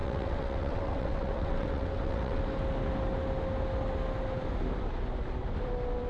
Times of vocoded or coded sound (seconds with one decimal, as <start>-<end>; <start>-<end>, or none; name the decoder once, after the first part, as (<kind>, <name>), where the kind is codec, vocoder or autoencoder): 0.0-2.4 (vocoder, WaveNeXt)